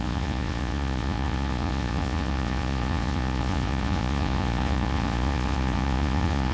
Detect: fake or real fake